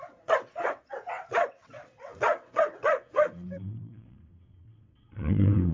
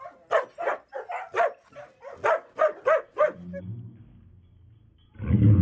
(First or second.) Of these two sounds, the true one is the second